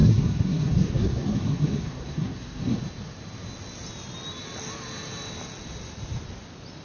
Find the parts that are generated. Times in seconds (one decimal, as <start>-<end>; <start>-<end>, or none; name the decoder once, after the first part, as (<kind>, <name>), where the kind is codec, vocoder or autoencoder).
0.0-2.8 (codec, SNAC)